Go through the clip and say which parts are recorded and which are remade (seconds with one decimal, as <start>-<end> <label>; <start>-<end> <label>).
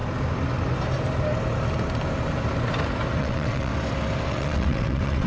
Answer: 0.0-3.2 recorded; 3.2-3.7 remade; 3.7-4.3 recorded; 4.3-5.3 remade